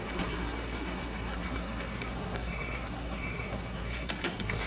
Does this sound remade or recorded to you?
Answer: remade